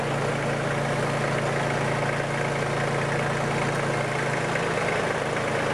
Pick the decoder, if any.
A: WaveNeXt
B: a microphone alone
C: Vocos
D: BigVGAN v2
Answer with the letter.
B